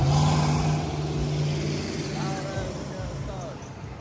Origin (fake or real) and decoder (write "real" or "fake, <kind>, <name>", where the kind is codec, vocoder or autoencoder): real